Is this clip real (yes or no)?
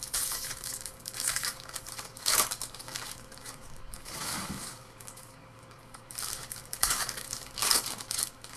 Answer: no